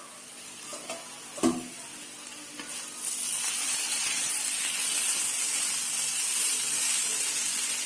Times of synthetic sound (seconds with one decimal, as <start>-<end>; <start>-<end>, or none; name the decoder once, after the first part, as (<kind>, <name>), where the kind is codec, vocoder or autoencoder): 3.6-4.3 (vocoder, Vocos)